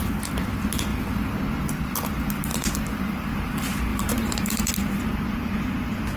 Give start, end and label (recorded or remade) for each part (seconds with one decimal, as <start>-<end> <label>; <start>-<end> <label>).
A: 0.0-2.5 recorded; 2.5-3.5 remade; 3.5-3.9 recorded; 3.9-4.7 remade; 4.7-6.2 recorded